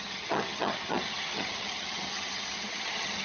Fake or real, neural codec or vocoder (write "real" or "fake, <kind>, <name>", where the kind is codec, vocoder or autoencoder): fake, vocoder, HiFi-GAN